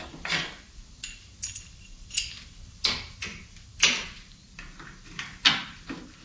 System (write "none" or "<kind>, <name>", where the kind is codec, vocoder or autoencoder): none